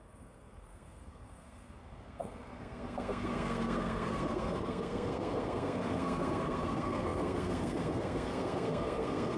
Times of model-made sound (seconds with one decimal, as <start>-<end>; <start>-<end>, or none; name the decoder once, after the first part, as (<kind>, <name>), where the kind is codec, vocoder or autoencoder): 0.0-9.4 (codec, SNAC)